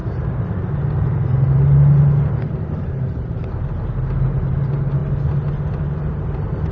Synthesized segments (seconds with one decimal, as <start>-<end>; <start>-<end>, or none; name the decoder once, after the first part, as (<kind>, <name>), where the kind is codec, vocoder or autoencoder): 0.0-0.6 (vocoder, BigVGAN v2)